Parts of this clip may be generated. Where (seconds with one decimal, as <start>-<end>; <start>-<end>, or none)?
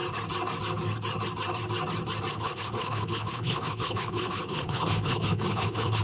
2.3-6.0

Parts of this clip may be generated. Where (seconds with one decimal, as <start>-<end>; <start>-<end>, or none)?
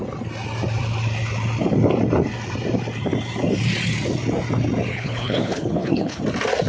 4.9-6.2